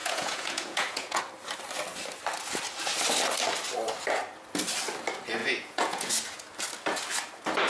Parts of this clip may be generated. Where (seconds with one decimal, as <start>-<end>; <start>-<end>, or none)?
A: 0.0-1.2; 5.4-6.1